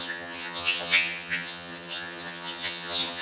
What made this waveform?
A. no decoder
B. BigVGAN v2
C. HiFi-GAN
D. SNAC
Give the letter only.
C